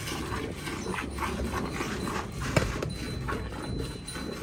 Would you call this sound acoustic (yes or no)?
yes